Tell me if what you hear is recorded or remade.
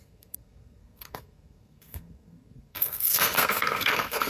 remade